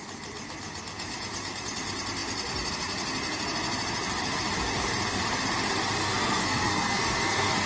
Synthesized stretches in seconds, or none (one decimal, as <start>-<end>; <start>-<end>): 6.0-7.7